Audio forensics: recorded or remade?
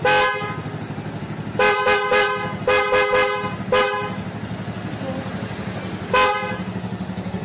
recorded